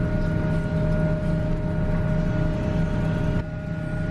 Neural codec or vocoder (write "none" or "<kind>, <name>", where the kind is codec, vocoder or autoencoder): none